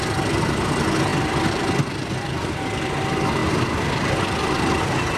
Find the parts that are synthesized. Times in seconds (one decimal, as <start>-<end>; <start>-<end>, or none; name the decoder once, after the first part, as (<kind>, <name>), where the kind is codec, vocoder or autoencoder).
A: none